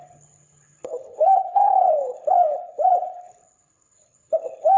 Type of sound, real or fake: fake